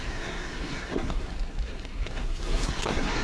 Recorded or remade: remade